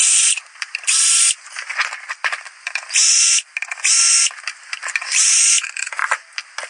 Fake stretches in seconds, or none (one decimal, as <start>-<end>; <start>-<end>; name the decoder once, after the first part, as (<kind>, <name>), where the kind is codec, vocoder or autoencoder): none